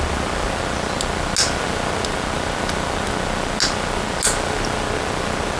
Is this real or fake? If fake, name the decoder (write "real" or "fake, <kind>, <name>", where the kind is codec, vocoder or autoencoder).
real